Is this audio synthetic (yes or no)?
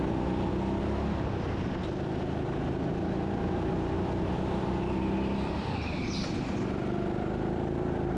no